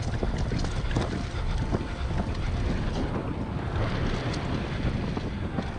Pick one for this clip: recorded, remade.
recorded